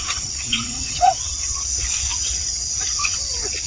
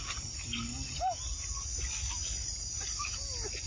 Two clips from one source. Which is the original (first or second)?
second